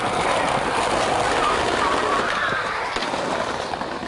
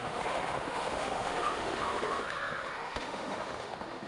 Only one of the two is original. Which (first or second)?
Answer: first